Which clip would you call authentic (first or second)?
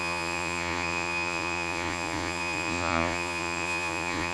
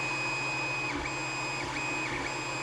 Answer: second